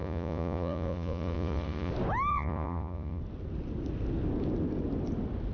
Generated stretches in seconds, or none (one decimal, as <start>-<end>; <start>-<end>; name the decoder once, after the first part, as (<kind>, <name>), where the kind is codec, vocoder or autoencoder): 0.0-1.9 (vocoder, Vocos); 2.3-3.2

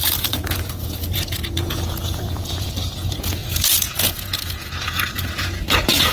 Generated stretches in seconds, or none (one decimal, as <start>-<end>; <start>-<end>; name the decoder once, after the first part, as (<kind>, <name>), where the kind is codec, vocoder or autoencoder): 0.0-6.1 (vocoder, Vocos)

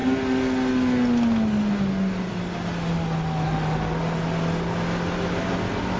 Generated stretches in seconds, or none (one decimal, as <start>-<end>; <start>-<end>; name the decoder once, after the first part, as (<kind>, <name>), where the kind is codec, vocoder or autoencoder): none

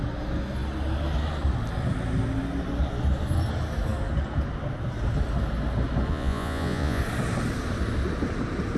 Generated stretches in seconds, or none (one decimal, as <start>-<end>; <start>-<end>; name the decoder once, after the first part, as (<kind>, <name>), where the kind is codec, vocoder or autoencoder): 6.1-7.0 (vocoder, Vocos)

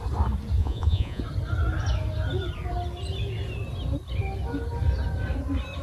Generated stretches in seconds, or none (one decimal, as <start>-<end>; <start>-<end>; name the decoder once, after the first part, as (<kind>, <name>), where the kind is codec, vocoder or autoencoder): 0.6-1.2 (vocoder, Vocos)

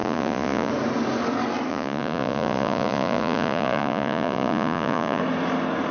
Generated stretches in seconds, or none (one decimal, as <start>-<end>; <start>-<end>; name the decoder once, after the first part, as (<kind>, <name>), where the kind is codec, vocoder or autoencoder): 0.0-0.7 (vocoder, Vocos); 1.7-5.2

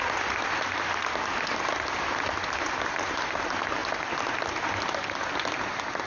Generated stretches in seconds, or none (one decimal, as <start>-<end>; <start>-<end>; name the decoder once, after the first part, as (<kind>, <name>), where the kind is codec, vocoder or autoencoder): none